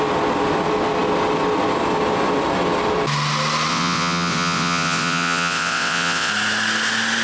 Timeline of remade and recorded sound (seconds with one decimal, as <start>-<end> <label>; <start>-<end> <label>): 0.0-3.7 recorded; 3.7-6.3 remade; 6.3-7.2 recorded